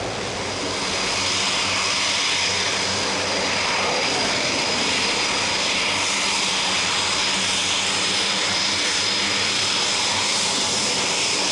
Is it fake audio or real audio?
real